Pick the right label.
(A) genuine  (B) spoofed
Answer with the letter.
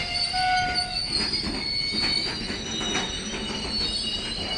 A